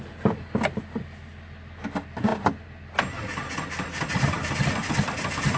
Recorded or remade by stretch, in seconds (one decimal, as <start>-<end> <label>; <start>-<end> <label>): 0.0-5.6 recorded